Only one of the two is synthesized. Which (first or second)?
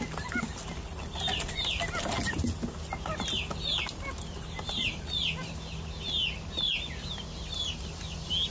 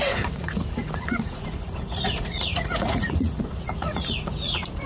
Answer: second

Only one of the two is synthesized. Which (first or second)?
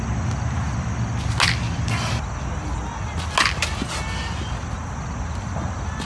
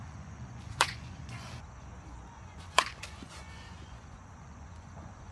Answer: second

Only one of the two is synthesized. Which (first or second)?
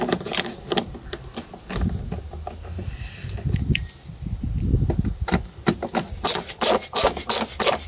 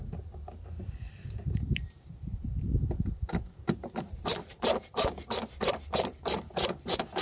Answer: second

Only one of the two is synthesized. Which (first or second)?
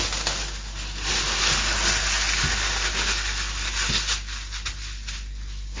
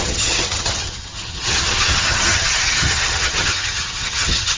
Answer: second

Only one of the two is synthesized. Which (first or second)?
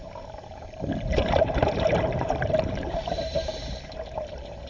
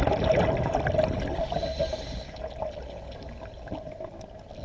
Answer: first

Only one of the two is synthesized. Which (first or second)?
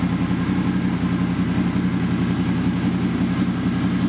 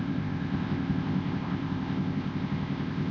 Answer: second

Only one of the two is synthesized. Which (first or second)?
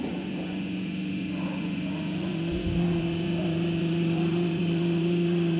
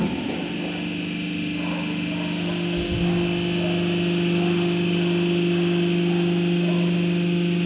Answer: first